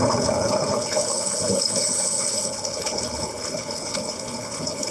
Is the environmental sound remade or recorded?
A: remade